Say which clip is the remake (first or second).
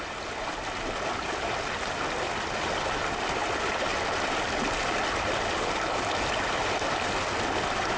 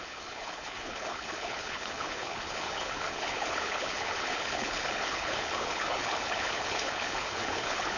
second